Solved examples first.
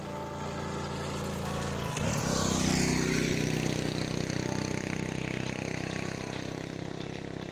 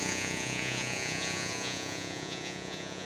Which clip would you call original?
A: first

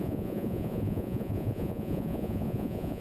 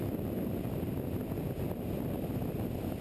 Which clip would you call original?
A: second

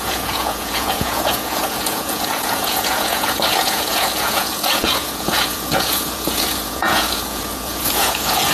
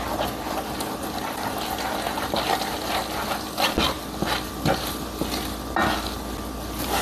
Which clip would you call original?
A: second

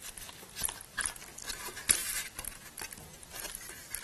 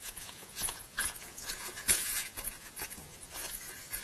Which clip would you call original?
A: first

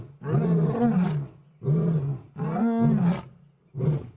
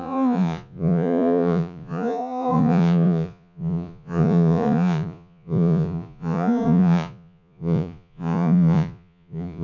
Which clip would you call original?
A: first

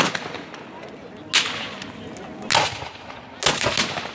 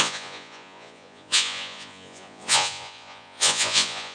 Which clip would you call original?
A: first